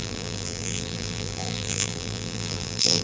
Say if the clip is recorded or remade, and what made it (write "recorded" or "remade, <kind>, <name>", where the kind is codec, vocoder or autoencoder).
remade, vocoder, BigVGAN v2